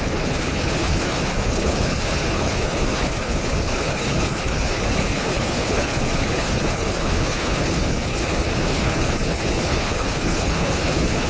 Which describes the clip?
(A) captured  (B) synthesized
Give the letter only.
B